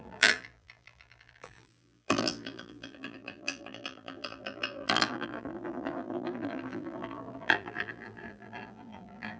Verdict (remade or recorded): remade